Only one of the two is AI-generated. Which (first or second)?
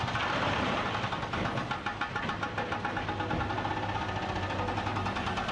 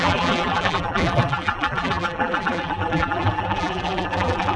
second